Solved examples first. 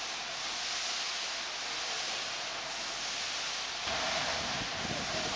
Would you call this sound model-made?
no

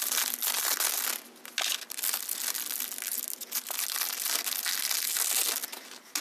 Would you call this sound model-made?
no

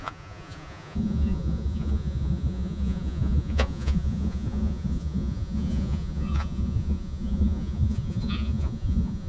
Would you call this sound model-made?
yes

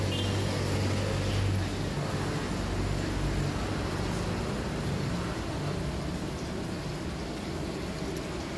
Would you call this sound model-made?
no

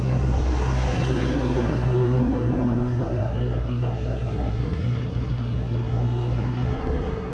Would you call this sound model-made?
yes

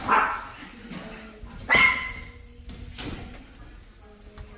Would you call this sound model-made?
no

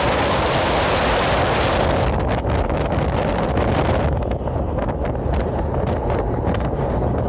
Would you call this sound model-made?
no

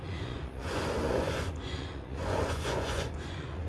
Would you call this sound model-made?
yes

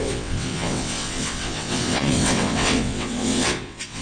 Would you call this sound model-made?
yes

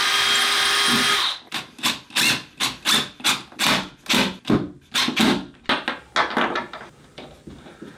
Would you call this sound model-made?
no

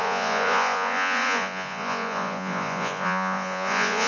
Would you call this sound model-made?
yes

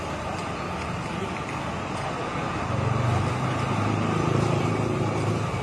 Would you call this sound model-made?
no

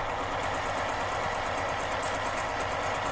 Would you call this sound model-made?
no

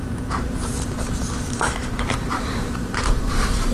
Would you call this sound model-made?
yes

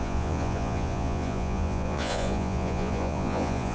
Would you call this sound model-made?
yes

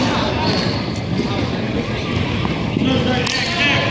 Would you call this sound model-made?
no